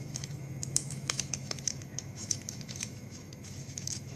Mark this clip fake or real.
fake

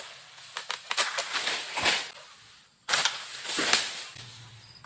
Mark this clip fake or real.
real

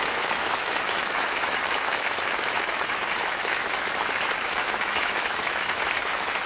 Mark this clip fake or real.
fake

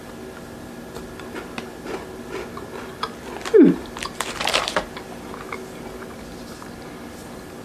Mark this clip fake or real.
real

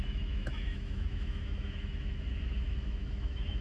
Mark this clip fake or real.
fake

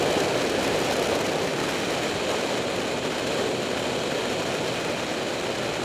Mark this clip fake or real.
real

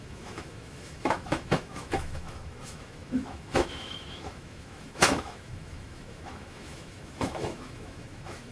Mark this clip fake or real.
fake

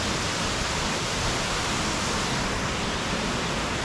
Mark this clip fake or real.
real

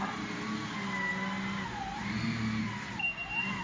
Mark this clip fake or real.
real